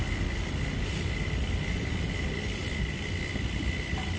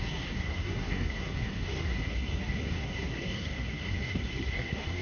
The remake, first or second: second